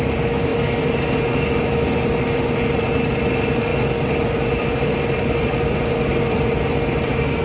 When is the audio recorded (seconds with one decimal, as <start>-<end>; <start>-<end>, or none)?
0.0-7.4

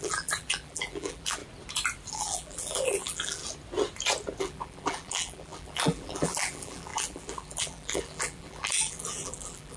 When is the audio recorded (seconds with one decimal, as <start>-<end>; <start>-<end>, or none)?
1.4-2.1; 3.4-4.4